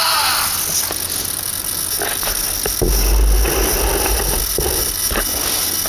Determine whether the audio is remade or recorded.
recorded